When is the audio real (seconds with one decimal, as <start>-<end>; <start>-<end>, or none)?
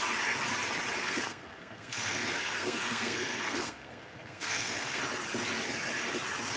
0.0-1.0; 5.0-6.6